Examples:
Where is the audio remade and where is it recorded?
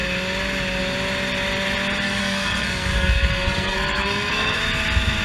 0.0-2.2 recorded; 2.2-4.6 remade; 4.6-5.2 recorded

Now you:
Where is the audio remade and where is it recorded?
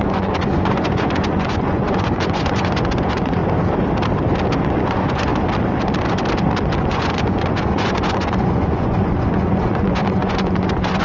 0.0-3.4 remade; 3.4-4.6 recorded; 4.6-5.3 remade; 5.3-6.8 recorded; 6.8-11.0 remade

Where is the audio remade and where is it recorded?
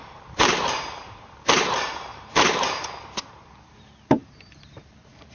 0.0-5.3 remade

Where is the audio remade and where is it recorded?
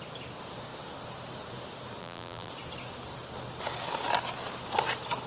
0.0-2.0 recorded; 2.0-2.5 remade; 2.5-5.3 recorded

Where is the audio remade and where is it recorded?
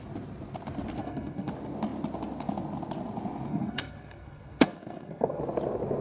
0.0-1.0 recorded; 1.0-1.5 remade; 1.5-3.5 recorded; 3.5-5.4 remade; 5.4-6.0 recorded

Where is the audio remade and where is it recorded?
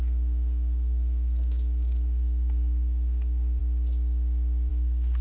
0.0-3.6 remade; 3.6-4.7 recorded; 4.7-5.2 remade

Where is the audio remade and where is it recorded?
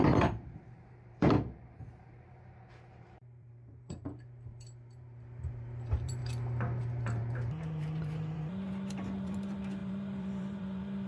0.0-6.2 remade; 6.2-6.8 recorded; 6.8-11.1 remade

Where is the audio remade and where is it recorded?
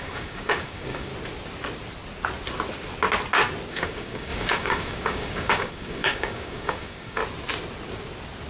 0.0-1.1 remade; 1.1-3.7 recorded; 3.7-7.2 remade; 7.2-8.5 recorded